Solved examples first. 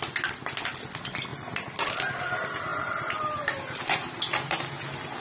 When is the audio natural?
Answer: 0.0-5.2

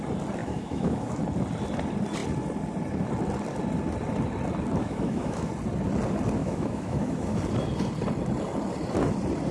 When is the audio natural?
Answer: 0.0-0.4; 1.2-4.8; 5.5-6.4; 7.4-9.5

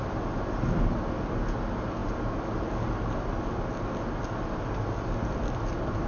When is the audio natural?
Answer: 0.0-6.1

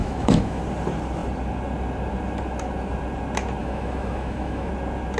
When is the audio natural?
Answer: 0.6-3.6; 4.7-5.2

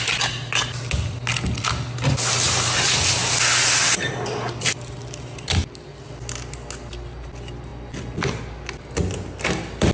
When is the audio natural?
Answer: 0.0-9.9

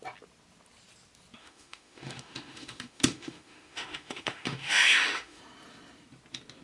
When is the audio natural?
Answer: 0.0-1.4; 5.4-6.6